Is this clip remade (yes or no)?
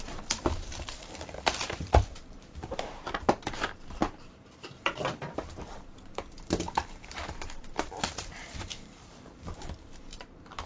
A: yes